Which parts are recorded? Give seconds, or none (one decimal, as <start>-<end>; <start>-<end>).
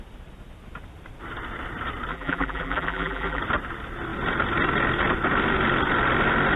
0.0-2.1; 3.4-6.6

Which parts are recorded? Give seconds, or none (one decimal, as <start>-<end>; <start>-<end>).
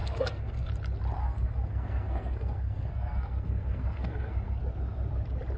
0.7-1.2; 4.6-5.6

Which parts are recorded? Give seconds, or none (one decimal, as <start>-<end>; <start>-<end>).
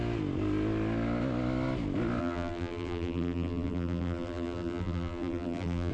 0.0-2.2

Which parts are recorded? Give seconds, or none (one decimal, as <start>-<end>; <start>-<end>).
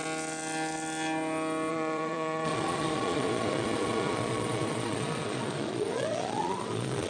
0.0-1.7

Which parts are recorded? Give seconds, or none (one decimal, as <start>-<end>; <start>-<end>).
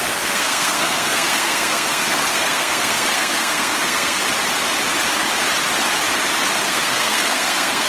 4.2-6.7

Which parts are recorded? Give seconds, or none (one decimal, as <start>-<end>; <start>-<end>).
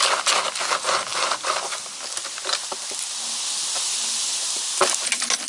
0.0-5.5